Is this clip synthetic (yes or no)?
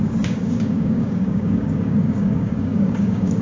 yes